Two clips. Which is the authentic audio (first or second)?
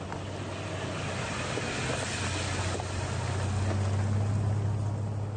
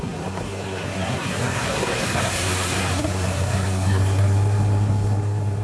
first